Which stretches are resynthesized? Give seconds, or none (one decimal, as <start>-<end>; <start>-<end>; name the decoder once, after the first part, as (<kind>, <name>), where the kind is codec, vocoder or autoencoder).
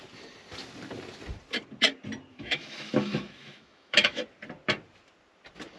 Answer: 2.3-4.2 (autoencoder, DAC-VAE)